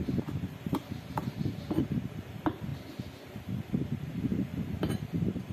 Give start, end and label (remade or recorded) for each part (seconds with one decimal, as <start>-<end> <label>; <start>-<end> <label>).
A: 0.0-2.7 remade; 2.7-3.7 recorded; 3.7-5.5 remade